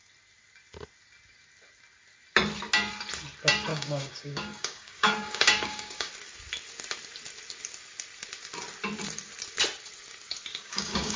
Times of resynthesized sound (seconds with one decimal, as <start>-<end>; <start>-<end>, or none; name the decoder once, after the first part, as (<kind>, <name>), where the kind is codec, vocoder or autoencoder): 3.7-6.1 (codec, DAC); 10.5-11.2